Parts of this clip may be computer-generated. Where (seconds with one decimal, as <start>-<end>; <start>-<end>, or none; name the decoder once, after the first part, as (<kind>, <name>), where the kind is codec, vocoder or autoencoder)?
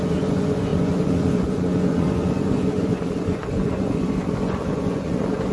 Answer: 0.0-5.5 (vocoder, Vocos)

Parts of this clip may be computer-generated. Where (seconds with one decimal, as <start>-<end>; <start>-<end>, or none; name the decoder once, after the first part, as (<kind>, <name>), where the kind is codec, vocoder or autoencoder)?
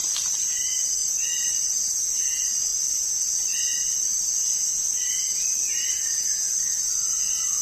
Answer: 1.0-2.0 (vocoder, BigVGAN v2)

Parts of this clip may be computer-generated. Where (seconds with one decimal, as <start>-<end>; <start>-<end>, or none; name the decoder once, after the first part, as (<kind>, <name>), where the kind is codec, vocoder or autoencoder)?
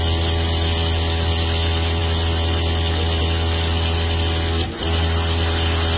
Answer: none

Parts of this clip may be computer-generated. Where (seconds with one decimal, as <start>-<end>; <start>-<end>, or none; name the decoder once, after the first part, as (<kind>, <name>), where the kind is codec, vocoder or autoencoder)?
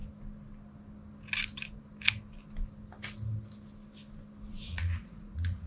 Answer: 4.5-5.7 (vocoder, Vocos)